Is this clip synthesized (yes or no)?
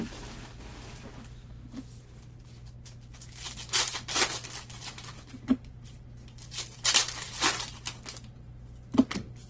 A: no